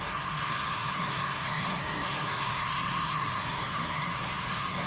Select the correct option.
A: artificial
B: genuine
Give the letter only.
A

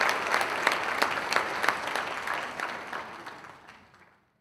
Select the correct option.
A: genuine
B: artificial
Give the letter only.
A